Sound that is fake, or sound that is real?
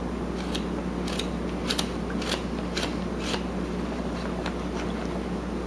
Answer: real